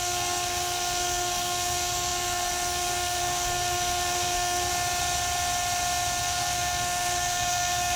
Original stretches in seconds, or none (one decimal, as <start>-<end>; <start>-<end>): 4.7-6.2